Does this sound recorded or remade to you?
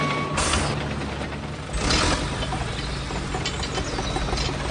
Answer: recorded